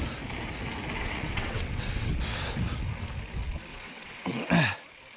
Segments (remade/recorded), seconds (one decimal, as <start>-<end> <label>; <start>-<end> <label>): 0.0-1.0 recorded; 1.0-2.2 remade; 2.2-3.7 recorded; 3.7-4.5 remade; 4.5-5.2 recorded